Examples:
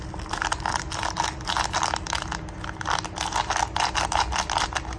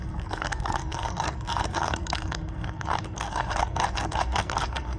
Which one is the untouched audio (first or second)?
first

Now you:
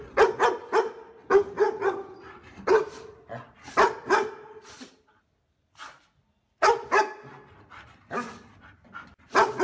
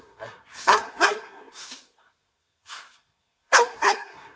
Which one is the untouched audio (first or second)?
first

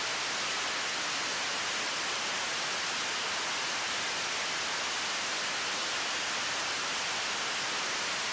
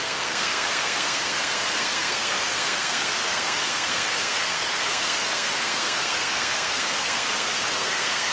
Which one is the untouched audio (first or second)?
first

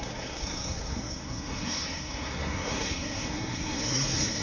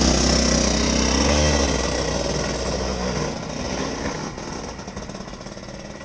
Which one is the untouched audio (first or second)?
second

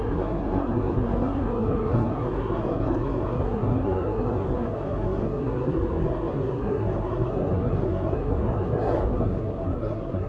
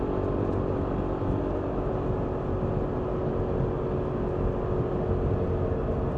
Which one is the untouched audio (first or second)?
second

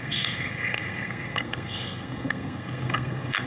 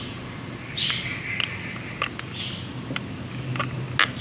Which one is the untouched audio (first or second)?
second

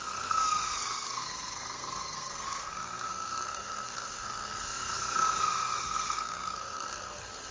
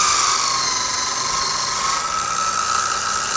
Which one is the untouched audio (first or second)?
second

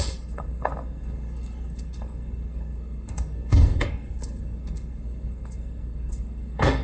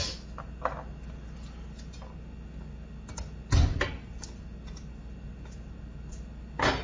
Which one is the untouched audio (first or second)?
second